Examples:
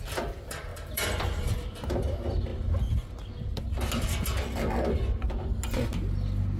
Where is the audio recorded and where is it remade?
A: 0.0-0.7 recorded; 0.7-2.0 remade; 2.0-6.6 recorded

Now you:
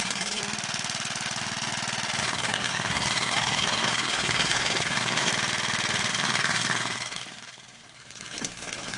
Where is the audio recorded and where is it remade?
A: 0.0-0.4 remade; 0.4-2.2 recorded; 2.2-5.3 remade; 5.3-6.1 recorded; 6.1-9.0 remade

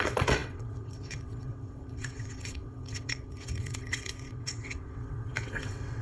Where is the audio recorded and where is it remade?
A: 0.0-6.0 remade

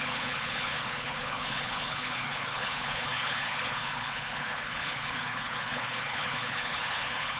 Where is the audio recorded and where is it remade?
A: 0.0-7.4 remade

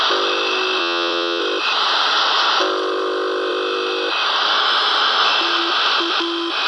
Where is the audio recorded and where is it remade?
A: 0.0-0.8 recorded; 0.8-1.4 remade; 1.4-6.7 recorded